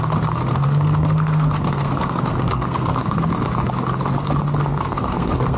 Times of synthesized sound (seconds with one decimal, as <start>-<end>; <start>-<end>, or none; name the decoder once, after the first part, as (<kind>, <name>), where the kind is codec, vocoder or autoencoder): 0.5-3.3 (codec, SNAC); 4.7-5.6